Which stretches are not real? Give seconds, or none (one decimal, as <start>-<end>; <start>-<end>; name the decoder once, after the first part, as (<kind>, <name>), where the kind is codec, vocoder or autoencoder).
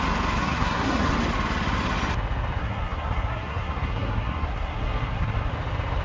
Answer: 0.4-1.1 (codec, SNAC); 2.6-5.5